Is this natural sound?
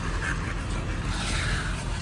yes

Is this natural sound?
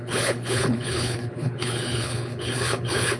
no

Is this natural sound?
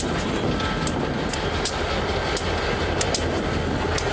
yes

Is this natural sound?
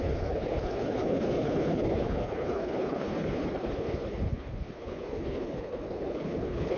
no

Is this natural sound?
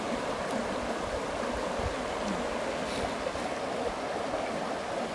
yes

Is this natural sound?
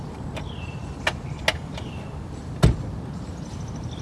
yes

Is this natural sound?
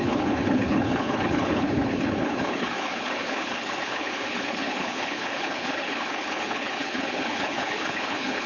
no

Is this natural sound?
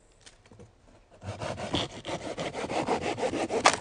yes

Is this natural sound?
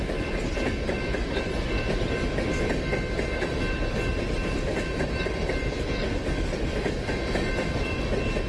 yes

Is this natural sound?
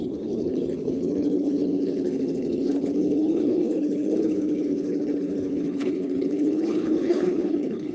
no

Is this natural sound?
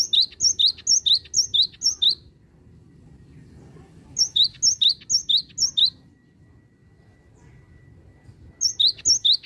yes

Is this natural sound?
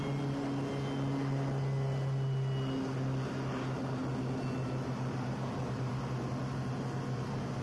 yes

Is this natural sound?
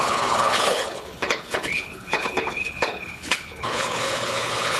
no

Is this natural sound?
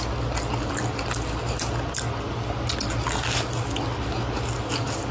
yes